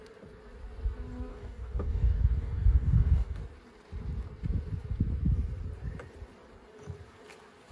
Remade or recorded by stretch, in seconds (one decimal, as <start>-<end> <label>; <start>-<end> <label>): 0.0-1.3 recorded; 1.3-3.4 remade; 3.4-7.7 recorded